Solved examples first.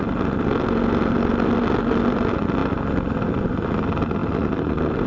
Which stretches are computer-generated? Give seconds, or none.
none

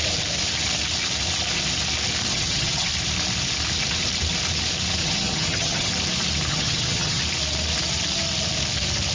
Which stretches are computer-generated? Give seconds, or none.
2.3-2.9 (vocoder, HiFi-GAN); 5.0-5.9; 6.5-7.2

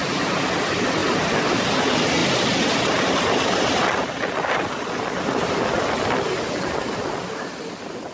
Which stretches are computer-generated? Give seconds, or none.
none

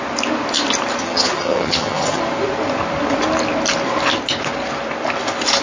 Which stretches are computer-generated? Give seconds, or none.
1.0-2.2 (vocoder, HiFi-GAN)

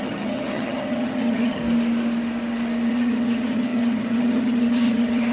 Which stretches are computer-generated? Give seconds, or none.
0.0-1.6 (vocoder, HiFi-GAN); 2.9-5.3

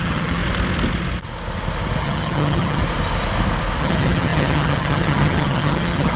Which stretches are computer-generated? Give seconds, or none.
0.0-0.4 (vocoder, HiFi-GAN); 2.0-2.8; 3.8-6.2

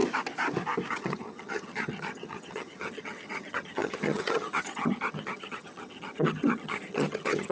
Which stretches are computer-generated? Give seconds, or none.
0.9-7.5 (vocoder, HiFi-GAN)